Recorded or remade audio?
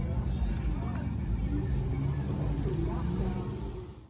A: recorded